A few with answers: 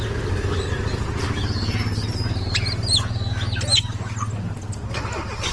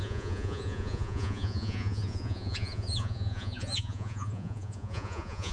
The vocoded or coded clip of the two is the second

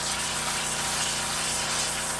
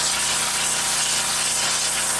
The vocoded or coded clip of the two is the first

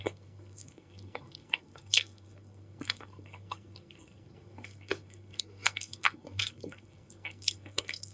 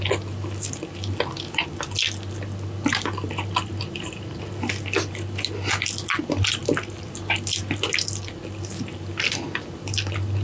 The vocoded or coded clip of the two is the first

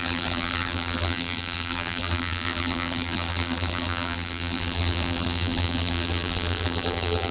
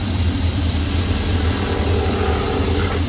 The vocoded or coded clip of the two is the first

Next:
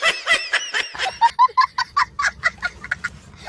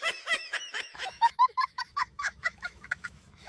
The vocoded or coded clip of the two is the second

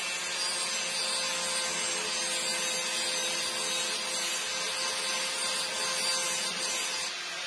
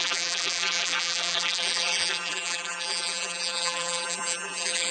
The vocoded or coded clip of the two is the second